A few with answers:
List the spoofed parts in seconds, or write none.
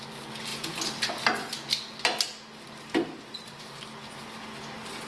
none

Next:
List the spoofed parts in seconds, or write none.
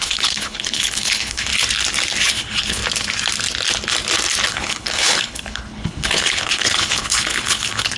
0.0-1.5; 2.2-2.8; 4.5-8.0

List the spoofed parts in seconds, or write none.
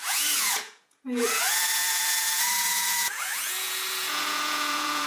0.0-5.1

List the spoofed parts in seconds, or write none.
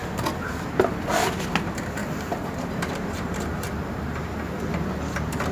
2.0-4.0